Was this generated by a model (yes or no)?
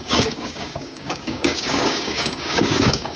yes